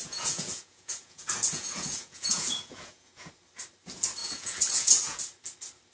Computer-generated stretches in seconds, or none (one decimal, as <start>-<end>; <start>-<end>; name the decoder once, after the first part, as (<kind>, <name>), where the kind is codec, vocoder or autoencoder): 0.0-3.3 (vocoder, Vocos); 4.2-5.2